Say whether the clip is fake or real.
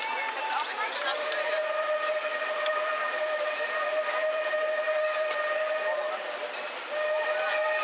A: fake